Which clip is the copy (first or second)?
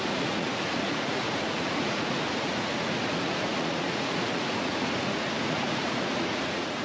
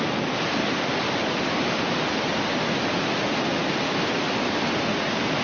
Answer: first